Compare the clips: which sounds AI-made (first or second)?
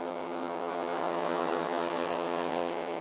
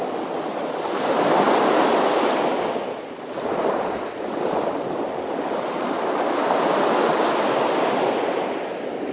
first